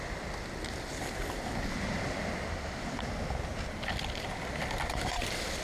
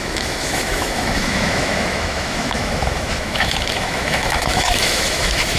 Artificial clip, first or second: second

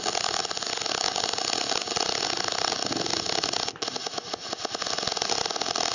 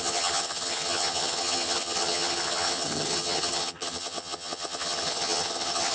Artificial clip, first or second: second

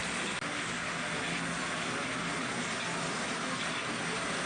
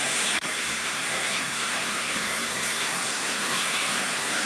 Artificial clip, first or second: second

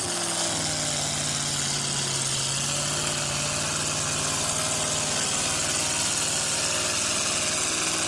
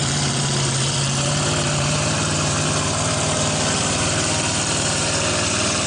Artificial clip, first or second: second